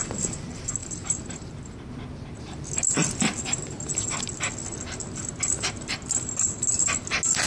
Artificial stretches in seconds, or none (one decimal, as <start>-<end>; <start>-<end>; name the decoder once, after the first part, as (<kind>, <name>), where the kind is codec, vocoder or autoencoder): 0.8-1.9 (vocoder, BigVGAN v2)